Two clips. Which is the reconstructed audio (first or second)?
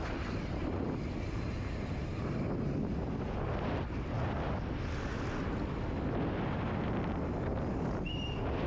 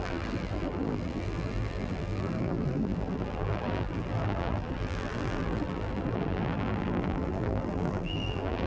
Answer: second